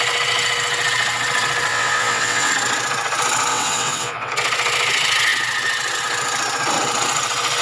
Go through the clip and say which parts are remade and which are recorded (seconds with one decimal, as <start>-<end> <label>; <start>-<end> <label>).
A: 0.0-1.7 recorded; 1.7-2.5 remade; 2.5-3.5 recorded; 3.5-4.3 remade; 4.3-7.6 recorded